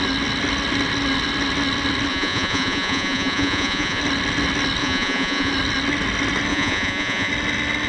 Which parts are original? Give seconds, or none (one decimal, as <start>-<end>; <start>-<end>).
0.0-2.1; 4.0-4.8; 5.5-6.5; 7.3-7.9